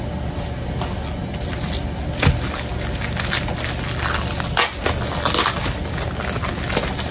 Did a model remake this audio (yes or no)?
no